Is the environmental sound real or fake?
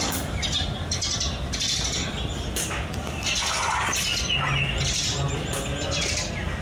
real